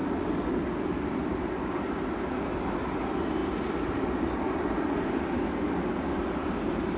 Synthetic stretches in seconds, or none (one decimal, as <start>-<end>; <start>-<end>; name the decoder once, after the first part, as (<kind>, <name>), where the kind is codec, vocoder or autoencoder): none